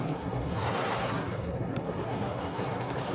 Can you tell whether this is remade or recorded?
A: remade